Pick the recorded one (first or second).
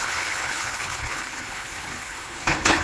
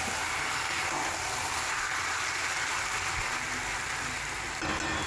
second